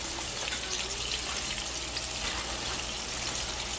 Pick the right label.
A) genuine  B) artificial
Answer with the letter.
A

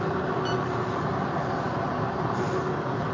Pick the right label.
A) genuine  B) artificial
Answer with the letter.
A